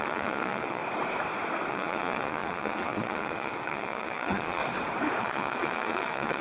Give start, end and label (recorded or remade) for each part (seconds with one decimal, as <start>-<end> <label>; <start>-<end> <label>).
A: 0.0-0.8 remade; 0.8-1.7 recorded; 1.7-4.6 remade; 4.6-5.2 recorded; 5.2-6.4 remade